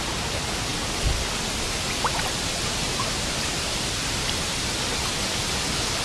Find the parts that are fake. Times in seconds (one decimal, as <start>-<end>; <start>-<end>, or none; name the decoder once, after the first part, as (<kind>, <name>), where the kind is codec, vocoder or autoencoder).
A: 2.8-4.7 (vocoder, BigVGAN v2)